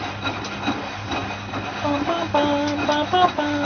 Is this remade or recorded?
recorded